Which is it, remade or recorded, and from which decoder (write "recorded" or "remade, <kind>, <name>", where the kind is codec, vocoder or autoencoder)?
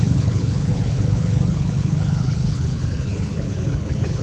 remade, codec, HILCodec